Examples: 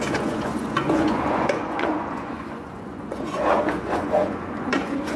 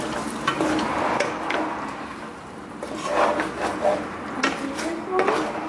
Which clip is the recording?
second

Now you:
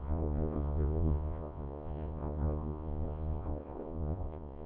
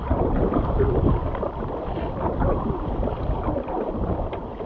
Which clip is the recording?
second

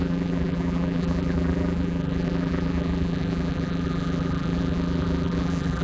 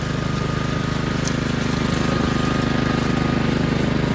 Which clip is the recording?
second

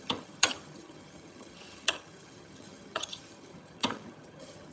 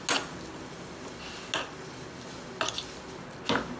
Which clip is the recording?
second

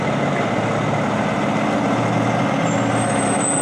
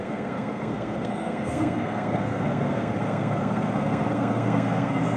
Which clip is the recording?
first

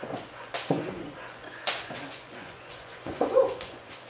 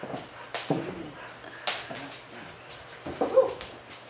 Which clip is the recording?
second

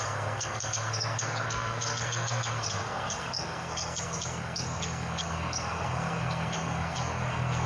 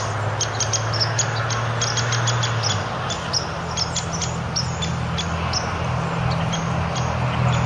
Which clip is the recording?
second